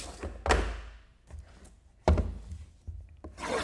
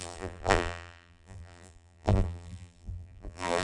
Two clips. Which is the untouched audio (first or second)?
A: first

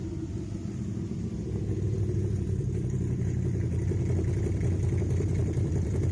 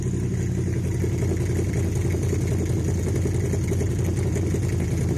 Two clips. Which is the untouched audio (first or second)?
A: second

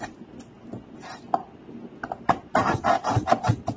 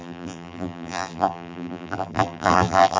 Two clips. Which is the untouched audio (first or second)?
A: first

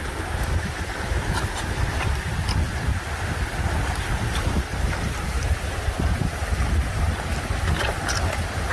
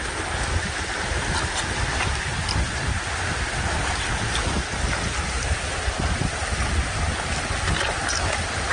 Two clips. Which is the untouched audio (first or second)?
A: second